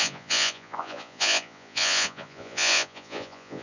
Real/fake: fake